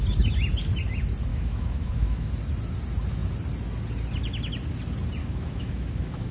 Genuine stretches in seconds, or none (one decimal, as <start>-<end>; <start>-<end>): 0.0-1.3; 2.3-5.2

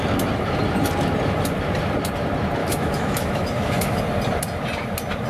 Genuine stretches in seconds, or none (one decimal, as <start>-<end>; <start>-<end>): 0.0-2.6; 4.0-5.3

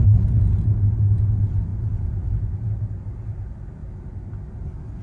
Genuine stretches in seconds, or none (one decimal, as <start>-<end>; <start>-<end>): 0.0-5.0

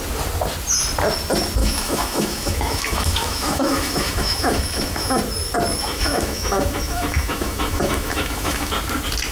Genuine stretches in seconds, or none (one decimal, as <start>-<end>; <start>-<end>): 0.0-1.6; 5.2-5.8; 8.7-9.3

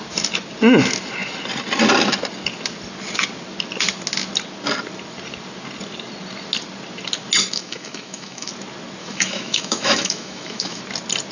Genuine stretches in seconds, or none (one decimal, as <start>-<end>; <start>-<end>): 0.0-7.4; 8.5-9.0; 10.8-11.3

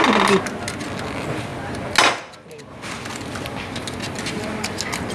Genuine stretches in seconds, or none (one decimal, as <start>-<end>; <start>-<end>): 0.0-5.1